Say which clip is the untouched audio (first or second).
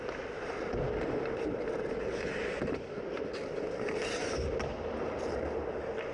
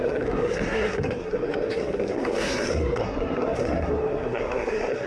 first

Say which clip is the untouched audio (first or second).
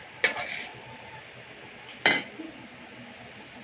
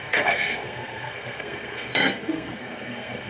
first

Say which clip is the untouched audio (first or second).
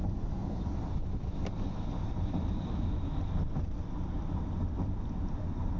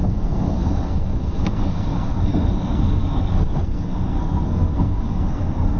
first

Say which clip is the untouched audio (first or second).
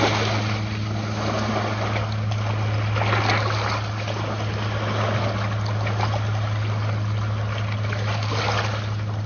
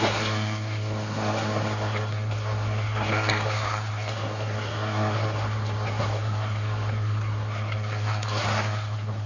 first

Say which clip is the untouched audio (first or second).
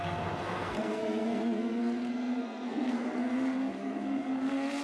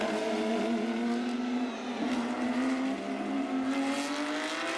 second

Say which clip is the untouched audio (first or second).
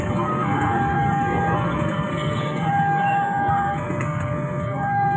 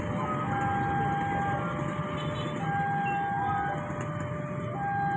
second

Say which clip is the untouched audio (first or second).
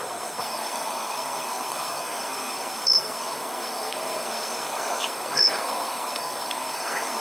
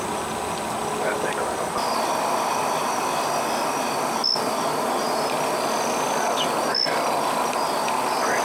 second